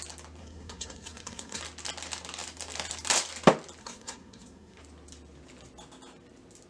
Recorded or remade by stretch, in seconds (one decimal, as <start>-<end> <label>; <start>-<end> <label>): 0.0-0.4 recorded; 0.4-1.6 remade; 1.6-3.8 recorded; 3.8-4.8 remade; 4.8-6.7 recorded